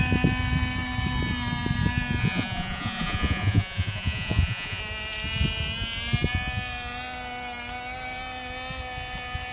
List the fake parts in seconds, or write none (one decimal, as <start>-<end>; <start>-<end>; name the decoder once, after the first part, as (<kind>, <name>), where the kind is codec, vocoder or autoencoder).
2.2-4.8 (vocoder, Vocos)